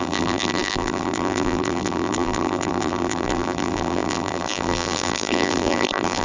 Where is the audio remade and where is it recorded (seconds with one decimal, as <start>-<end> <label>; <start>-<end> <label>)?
0.0-6.2 remade